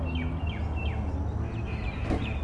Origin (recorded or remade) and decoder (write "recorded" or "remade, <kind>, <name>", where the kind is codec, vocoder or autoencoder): recorded